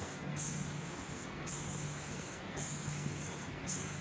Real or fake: fake